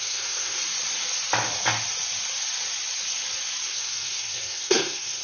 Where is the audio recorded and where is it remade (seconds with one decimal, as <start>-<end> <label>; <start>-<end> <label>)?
0.0-0.6 remade; 0.6-3.7 recorded; 3.7-5.2 remade